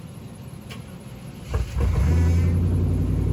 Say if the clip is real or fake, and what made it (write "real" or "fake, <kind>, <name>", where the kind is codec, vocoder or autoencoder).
real